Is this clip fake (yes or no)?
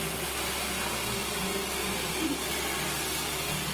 no